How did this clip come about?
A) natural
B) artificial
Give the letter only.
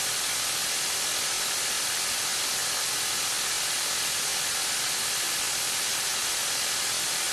A